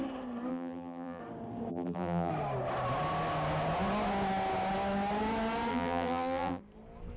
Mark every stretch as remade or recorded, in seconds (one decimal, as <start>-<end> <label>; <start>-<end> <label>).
0.0-0.5 recorded; 0.5-1.2 remade; 1.2-1.7 recorded; 1.7-2.3 remade; 2.3-5.7 recorded; 5.7-6.6 remade; 6.6-7.2 recorded